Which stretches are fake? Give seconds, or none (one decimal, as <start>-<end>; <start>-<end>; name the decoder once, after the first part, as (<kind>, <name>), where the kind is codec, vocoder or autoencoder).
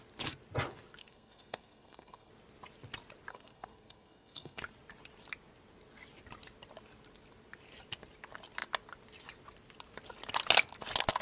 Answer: 1.0-2.3 (codec, SNAC); 3.3-4.6